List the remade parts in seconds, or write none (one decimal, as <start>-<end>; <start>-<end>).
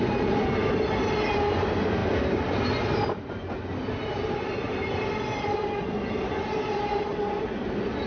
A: none